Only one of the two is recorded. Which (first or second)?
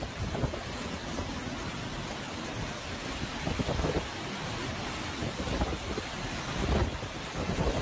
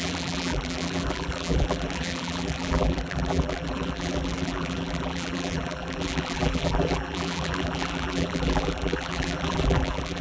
first